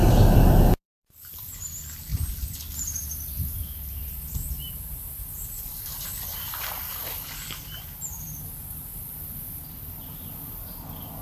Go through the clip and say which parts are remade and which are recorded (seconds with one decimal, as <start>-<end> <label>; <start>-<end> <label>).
0.0-2.1 remade; 2.1-4.5 recorded; 4.5-7.0 remade; 7.0-8.1 recorded; 8.1-11.2 remade